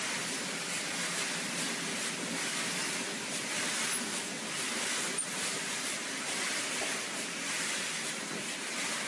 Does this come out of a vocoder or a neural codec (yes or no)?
no